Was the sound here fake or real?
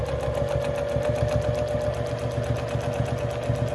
real